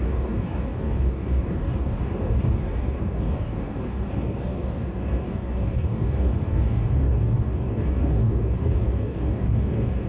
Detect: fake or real fake